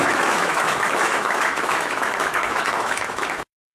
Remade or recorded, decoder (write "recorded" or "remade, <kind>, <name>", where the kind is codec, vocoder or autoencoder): remade, autoencoder, DAC-VAE